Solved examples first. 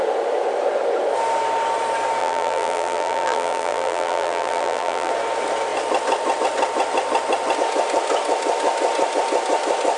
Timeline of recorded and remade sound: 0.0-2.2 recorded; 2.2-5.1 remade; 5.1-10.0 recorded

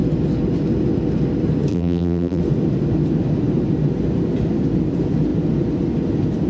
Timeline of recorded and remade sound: 0.0-1.7 recorded; 1.7-2.4 remade; 2.4-6.5 recorded

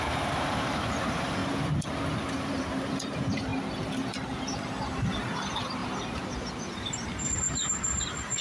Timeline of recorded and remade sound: 0.0-1.4 remade; 1.4-2.4 recorded; 2.4-3.5 remade; 3.5-4.5 recorded; 4.5-5.8 remade; 5.8-7.7 recorded; 7.7-8.4 remade

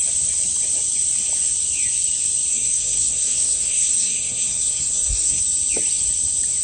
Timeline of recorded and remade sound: 0.0-2.5 recorded; 2.5-5.4 remade; 5.4-6.6 recorded

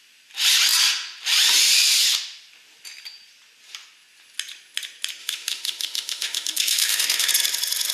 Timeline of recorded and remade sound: 0.0-5.2 recorded; 5.2-7.3 remade; 7.3-7.9 recorded

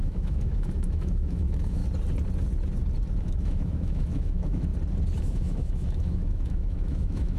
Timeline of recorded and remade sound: 0.0-1.8 remade; 1.8-3.2 recorded; 3.2-4.7 remade; 4.7-5.2 recorded; 5.2-7.4 remade

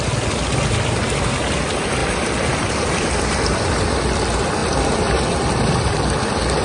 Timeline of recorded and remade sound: 0.0-2.0 recorded; 2.0-3.4 remade; 3.4-6.6 recorded

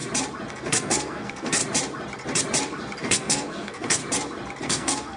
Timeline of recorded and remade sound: 0.0-0.5 recorded; 0.5-1.6 remade; 1.6-3.0 recorded; 3.0-4.0 remade; 4.0-4.6 recorded; 4.6-5.2 remade